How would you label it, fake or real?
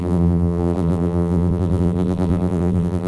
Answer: fake